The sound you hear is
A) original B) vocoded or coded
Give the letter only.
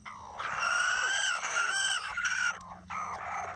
B